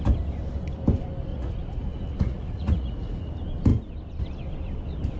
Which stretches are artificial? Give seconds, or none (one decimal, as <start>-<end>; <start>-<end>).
1.3-3.3